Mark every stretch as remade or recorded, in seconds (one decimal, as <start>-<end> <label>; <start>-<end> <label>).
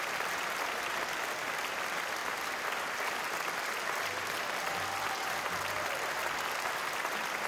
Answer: 0.0-7.5 recorded